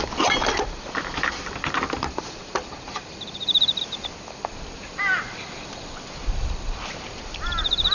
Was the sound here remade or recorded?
remade